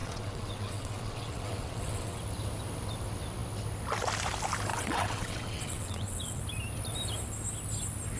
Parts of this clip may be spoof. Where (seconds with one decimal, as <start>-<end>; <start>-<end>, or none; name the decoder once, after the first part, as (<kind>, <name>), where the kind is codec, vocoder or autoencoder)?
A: 0.0-2.2 (vocoder, WaveNeXt); 4.7-6.4